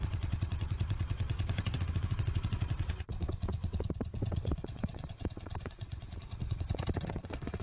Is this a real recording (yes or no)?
no